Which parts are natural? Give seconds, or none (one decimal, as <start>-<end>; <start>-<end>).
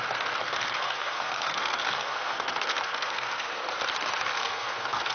0.0-0.4; 3.5-4.3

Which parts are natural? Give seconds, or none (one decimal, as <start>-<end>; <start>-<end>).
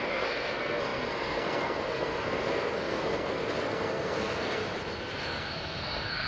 4.6-5.2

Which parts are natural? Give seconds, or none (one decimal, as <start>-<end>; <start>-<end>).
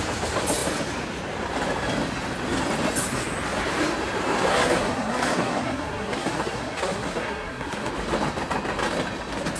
0.0-4.5; 7.9-9.6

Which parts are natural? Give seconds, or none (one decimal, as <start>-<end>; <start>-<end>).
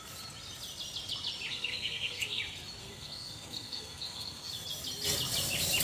0.0-1.5; 2.4-2.8; 4.5-5.8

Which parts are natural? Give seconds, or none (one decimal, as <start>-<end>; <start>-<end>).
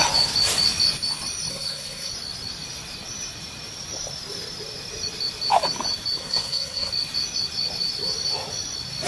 0.0-1.5; 2.1-6.2; 6.9-9.1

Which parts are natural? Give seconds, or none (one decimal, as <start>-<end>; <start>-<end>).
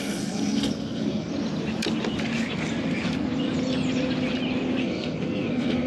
1.3-4.8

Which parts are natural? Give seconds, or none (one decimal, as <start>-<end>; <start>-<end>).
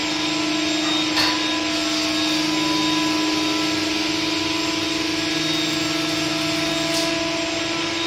0.0-8.1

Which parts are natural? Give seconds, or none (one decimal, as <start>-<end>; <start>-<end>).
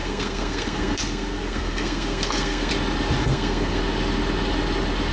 2.7-3.2; 3.8-5.1